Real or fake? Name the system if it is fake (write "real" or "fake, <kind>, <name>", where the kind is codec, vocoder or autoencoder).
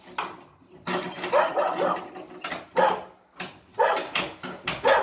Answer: real